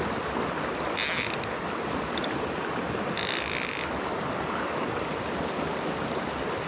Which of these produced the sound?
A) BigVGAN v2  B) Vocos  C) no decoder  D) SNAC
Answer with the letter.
C